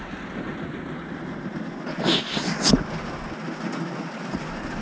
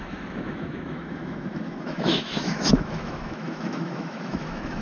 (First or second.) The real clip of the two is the first